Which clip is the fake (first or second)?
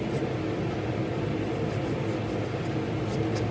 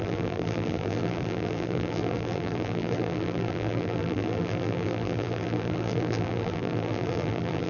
second